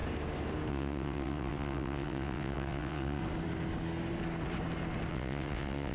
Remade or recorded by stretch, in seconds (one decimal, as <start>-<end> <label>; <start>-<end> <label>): 0.0-0.7 recorded; 0.7-3.2 remade; 3.2-5.1 recorded; 5.1-5.9 remade